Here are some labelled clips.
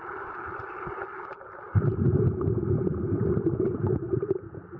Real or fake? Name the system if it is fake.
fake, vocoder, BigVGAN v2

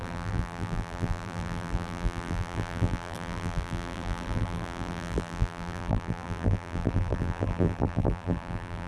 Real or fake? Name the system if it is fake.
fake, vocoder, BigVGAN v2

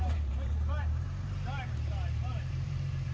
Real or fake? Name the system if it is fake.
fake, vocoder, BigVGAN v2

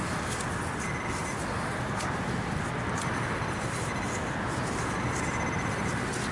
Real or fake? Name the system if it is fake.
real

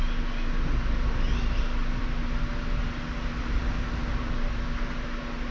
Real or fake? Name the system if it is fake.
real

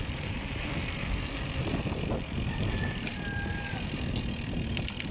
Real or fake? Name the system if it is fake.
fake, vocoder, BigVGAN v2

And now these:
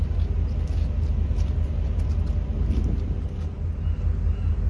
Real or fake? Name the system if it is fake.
real